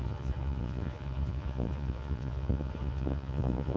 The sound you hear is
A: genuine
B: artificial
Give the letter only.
B